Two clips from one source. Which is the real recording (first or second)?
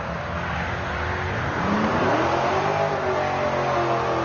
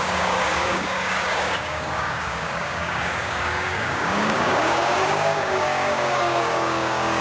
first